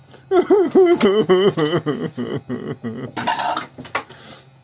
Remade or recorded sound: recorded